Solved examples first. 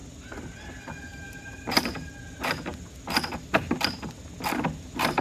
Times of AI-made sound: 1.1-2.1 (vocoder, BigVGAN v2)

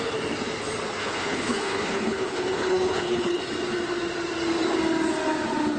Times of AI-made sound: 1.0-3.4 (codec, HILCodec)

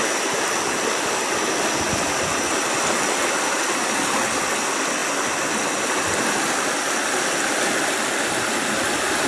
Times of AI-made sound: none

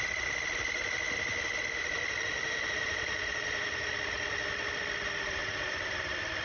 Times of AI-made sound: 1.6-3.9 (vocoder, BigVGAN v2); 5.4-6.0

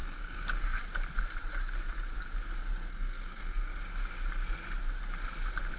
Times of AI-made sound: 0.0-0.8 (codec, SNAC); 2.9-3.8

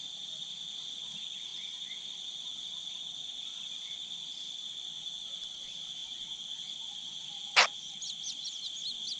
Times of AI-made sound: none